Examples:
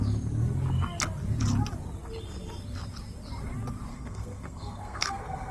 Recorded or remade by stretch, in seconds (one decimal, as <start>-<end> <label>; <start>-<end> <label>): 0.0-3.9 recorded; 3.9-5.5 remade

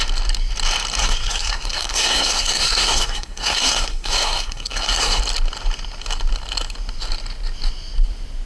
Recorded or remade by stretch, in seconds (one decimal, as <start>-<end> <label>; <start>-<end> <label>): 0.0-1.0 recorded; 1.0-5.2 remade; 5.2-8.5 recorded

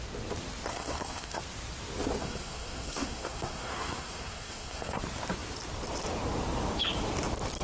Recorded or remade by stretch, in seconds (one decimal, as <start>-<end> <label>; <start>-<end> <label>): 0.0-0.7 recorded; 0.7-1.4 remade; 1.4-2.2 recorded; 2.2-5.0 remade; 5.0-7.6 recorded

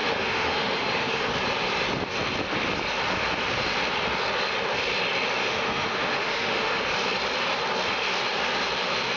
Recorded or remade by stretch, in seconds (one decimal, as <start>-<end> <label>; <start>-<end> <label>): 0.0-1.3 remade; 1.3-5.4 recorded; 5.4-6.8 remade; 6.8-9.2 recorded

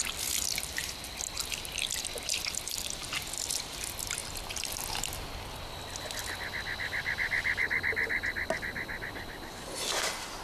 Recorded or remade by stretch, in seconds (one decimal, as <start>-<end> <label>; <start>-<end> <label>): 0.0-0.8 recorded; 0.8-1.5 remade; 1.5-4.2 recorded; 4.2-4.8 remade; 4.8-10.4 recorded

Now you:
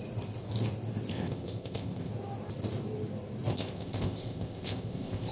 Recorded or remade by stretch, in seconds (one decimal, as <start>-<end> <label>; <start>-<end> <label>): 0.0-1.1 recorded; 1.1-2.1 remade; 2.1-3.5 recorded; 3.5-5.3 remade

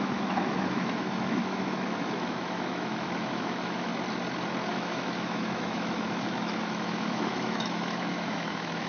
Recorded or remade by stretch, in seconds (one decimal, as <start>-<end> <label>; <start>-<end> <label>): 0.0-3.9 remade; 3.9-4.7 recorded; 4.7-8.9 remade